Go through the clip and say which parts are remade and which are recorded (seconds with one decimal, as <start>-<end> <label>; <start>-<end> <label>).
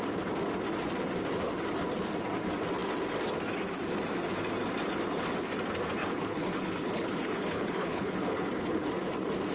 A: 0.0-6.0 recorded; 6.0-8.8 remade; 8.8-9.5 recorded